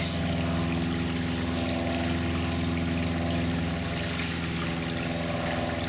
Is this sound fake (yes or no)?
no